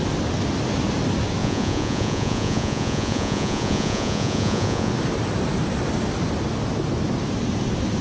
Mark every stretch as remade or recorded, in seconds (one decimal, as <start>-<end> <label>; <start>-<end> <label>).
0.0-1.4 recorded; 1.4-4.9 remade; 4.9-8.0 recorded